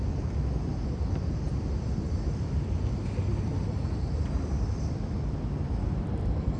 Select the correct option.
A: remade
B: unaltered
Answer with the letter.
B